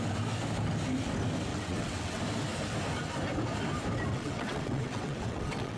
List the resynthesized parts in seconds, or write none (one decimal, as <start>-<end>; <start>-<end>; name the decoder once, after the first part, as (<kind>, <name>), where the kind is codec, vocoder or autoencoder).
1.5-2.2 (vocoder, WaveNeXt); 4.1-5.8